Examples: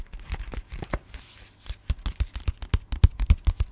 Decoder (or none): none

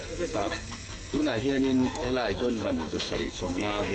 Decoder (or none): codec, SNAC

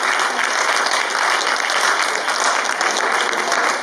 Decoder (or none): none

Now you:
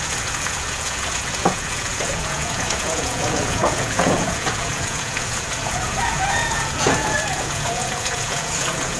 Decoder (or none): vocoder, Vocos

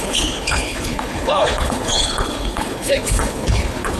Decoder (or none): codec, HILCodec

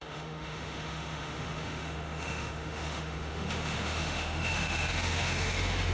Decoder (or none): autoencoder, DAC-VAE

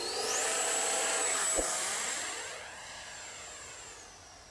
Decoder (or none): none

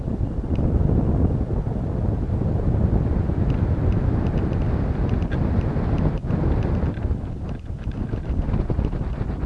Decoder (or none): none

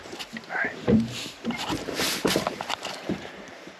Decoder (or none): vocoder, BigVGAN v2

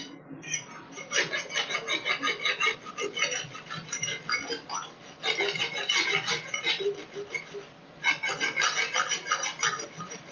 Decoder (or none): none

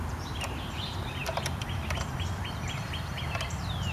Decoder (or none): vocoder, BigVGAN v2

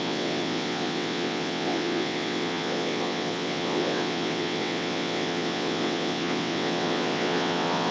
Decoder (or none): vocoder, WaveNeXt